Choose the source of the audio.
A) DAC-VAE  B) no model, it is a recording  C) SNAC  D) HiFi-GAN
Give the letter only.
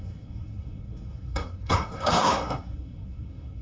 C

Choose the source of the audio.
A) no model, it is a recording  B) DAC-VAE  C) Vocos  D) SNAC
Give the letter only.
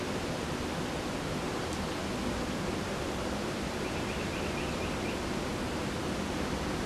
A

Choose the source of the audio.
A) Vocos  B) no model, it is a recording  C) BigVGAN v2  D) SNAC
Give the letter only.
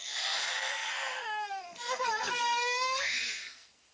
D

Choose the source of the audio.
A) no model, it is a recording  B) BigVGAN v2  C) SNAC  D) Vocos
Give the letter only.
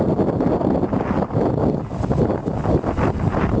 A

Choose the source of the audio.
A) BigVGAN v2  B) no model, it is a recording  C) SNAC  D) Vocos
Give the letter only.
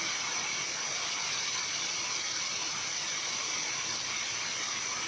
B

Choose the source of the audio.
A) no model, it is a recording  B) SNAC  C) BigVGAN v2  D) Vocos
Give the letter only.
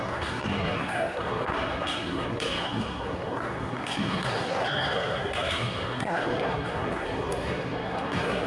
B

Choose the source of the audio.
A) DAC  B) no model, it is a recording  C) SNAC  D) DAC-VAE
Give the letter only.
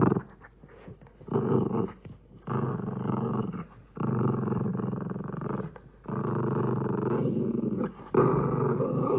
B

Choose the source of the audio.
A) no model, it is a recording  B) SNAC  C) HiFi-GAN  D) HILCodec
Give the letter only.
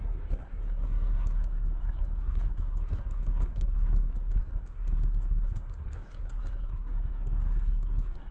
B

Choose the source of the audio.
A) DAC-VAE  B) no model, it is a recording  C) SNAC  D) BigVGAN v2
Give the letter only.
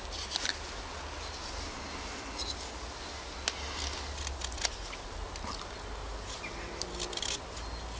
B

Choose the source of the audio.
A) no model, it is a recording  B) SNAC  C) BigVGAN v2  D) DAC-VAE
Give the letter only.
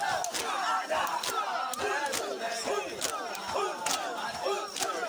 A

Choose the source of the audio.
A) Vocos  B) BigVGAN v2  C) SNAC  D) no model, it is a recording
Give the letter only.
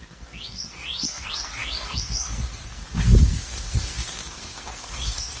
C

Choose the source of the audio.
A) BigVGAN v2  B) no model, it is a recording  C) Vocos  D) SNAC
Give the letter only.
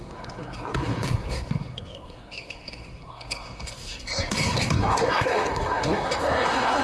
D